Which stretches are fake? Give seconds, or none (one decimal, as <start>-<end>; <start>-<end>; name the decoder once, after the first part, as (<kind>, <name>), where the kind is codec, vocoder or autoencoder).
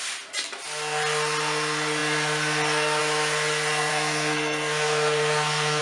3.9-5.8 (codec, SNAC)